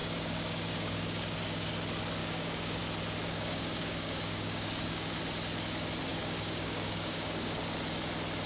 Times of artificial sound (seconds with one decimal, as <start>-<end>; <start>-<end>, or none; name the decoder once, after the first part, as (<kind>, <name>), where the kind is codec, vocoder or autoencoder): 0.0-1.7 (codec, DAC); 2.2-2.8; 3.2-5.2; 6.1-7.6